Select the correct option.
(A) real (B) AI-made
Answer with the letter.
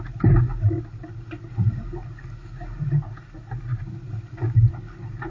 A